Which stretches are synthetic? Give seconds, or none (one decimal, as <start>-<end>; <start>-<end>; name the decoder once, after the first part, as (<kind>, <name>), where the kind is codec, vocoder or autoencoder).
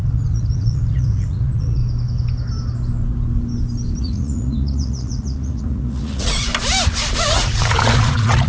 0.0-1.8 (vocoder, Vocos); 4.0-6.5; 7.1-8.5